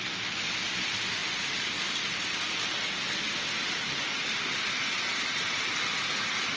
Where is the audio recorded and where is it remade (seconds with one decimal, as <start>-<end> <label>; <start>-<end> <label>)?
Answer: 0.0-5.1 recorded; 5.1-6.6 remade